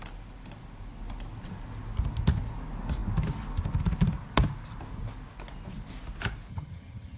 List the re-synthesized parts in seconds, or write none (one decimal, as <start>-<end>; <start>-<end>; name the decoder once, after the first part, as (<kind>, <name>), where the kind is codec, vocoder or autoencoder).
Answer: 6.5-7.2 (vocoder, HiFi-GAN)